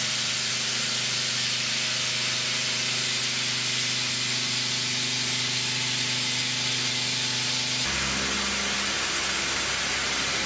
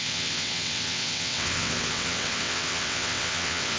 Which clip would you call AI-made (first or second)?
second